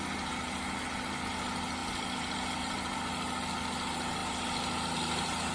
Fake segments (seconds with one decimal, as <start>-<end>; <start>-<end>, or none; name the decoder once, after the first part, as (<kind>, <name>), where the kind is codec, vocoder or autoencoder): none